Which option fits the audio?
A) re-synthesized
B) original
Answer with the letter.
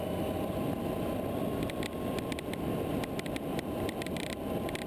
A